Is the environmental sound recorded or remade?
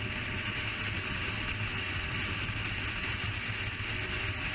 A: recorded